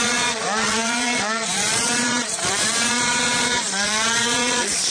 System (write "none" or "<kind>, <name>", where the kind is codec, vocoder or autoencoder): vocoder, Vocos